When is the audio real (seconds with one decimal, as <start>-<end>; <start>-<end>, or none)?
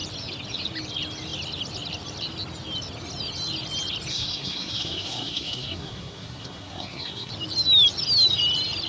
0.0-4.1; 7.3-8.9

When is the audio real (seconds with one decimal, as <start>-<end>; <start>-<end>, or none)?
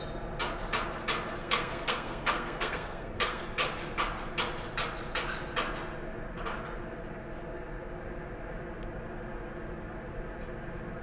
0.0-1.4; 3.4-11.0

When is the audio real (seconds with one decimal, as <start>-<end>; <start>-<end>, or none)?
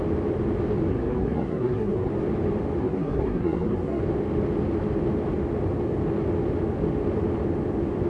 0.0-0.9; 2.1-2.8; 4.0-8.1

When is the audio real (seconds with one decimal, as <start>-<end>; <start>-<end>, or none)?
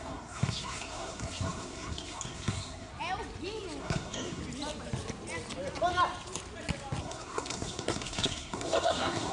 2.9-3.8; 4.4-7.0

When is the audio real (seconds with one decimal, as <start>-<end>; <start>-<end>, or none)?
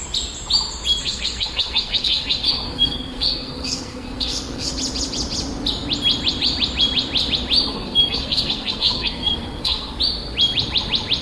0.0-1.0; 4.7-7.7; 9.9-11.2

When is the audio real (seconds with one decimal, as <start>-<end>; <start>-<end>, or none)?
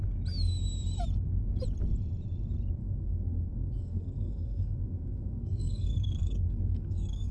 0.0-2.8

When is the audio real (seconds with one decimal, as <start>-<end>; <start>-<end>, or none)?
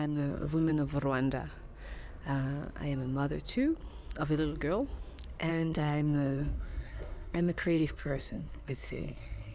0.7-5.5